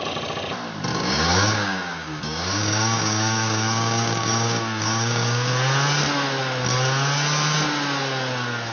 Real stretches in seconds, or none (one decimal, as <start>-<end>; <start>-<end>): 0.0-0.9; 5.5-8.7